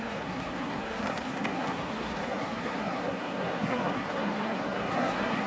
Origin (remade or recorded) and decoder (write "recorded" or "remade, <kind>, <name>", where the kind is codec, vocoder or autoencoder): remade, codec, SNAC